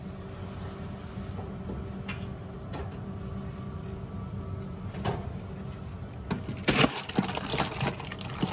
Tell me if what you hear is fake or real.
real